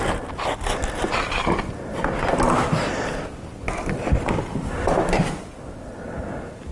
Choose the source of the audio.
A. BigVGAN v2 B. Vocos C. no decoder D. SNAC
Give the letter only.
C